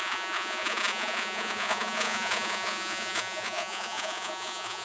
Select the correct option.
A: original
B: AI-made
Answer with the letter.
B